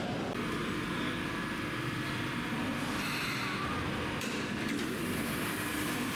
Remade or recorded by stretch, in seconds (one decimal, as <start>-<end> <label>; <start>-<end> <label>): 0.0-6.2 recorded